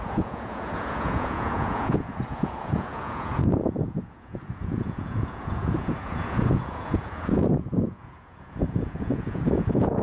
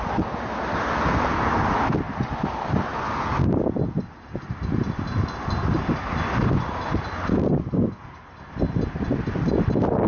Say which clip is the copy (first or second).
first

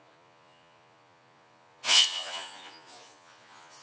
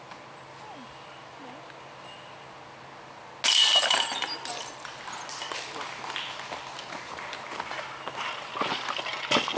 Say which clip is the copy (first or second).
first